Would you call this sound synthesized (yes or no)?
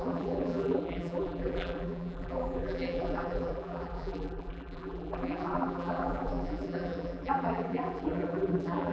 yes